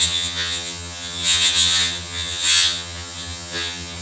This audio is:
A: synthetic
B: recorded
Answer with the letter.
A